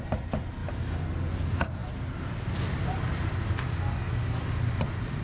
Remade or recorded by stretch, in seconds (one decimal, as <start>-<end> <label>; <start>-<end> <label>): 0.0-5.2 recorded